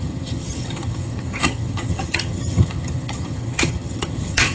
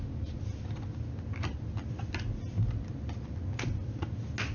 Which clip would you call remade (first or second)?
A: first